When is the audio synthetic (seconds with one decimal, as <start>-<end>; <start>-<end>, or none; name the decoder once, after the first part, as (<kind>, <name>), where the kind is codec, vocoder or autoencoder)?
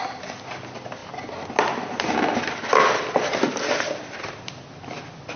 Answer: none